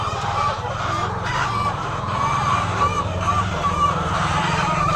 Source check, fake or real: fake